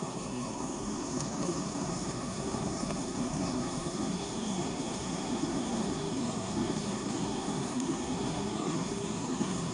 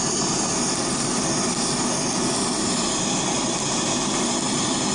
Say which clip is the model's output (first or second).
first